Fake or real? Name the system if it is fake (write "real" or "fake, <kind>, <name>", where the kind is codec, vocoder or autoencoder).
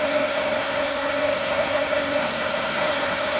fake, codec, SNAC